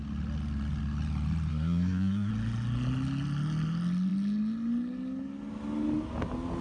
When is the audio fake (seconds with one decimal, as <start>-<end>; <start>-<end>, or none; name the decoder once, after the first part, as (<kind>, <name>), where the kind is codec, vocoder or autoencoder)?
1.5-2.3 (codec, SNAC)